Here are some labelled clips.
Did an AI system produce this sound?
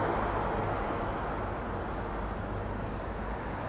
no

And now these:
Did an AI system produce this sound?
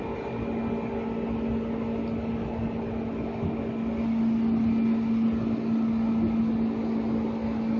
no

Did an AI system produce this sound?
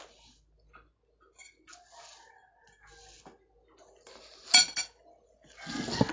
no